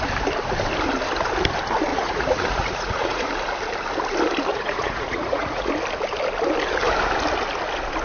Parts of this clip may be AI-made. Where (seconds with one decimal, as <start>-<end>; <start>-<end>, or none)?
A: 1.9-3.2; 4.5-5.7